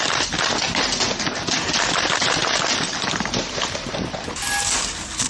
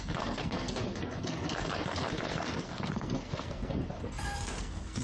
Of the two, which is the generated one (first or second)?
second